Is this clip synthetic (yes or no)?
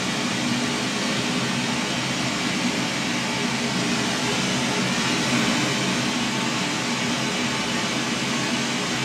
no